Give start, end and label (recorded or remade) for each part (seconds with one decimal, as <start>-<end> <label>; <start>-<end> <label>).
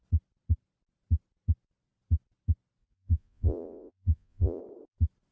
0.0-2.8 recorded; 2.8-4.6 remade; 4.6-5.3 recorded